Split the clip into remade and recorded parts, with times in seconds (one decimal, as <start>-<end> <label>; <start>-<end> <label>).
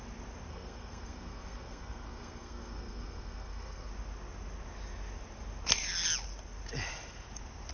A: 0.0-0.5 recorded; 0.5-3.9 remade; 3.9-7.7 recorded